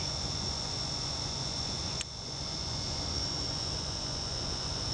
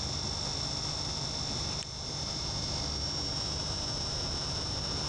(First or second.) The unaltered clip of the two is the second